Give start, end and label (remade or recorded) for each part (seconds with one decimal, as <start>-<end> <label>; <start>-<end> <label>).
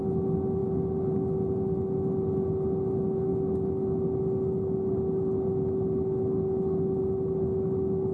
0.0-8.1 recorded